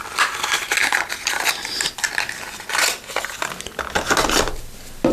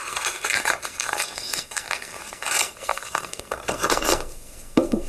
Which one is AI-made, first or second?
second